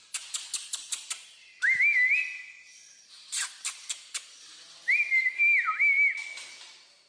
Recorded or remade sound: recorded